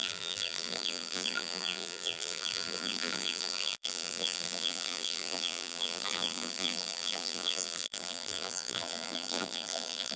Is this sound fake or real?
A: fake